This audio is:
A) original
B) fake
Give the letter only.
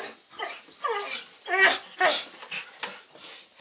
A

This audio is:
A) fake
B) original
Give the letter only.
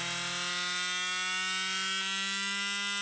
B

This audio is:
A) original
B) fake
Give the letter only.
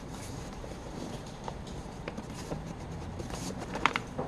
B